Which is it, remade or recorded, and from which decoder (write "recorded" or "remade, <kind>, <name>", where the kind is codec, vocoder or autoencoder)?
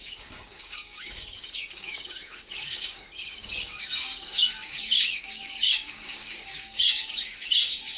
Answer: remade, codec, DAC